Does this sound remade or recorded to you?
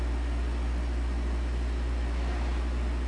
recorded